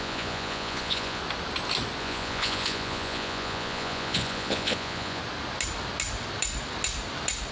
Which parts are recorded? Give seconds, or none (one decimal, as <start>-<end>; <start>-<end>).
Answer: 1.2-2.0; 5.2-7.5